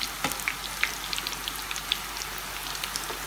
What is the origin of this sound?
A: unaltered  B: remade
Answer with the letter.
A